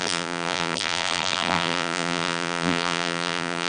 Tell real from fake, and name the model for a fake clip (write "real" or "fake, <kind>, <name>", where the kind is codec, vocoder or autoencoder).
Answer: fake, vocoder, BigVGAN v2